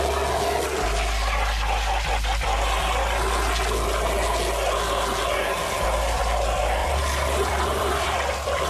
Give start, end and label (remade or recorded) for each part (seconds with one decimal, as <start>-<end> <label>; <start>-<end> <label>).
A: 0.0-6.8 recorded; 6.8-8.7 remade